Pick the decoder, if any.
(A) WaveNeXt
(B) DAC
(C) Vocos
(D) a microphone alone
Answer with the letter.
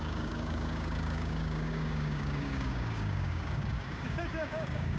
B